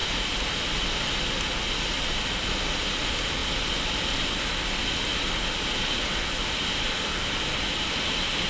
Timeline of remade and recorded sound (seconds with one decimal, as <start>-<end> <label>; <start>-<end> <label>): 0.0-3.4 remade; 3.4-4.0 recorded; 4.0-5.1 remade; 5.1-5.8 recorded; 5.8-8.5 remade